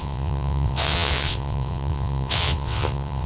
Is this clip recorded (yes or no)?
no